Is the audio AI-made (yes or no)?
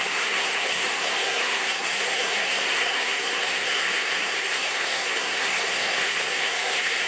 yes